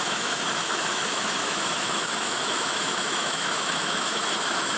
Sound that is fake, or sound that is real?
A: fake